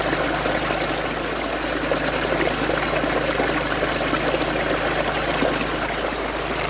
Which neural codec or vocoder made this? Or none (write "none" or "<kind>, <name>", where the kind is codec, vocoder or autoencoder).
none